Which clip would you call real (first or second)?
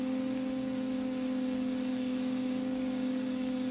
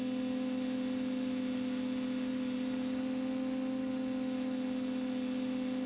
second